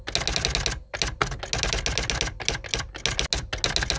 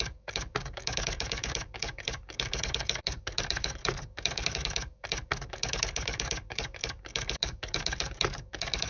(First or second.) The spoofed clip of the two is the second